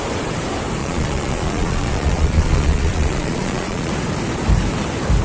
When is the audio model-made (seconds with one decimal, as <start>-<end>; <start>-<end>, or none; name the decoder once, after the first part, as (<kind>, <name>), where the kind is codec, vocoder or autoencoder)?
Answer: 0.8-3.9 (vocoder, Vocos)